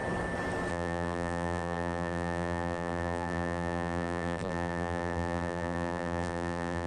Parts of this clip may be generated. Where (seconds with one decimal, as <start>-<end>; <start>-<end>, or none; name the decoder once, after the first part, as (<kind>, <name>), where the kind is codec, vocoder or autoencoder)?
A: 0.7-6.9 (vocoder, BigVGAN v2)